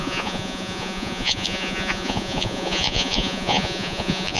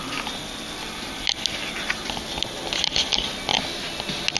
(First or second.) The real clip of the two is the second